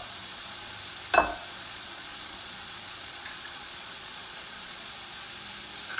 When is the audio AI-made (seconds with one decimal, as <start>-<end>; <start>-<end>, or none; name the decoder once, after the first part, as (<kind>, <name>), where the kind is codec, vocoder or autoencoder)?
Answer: 0.0-0.8 (vocoder, Vocos); 1.3-4.9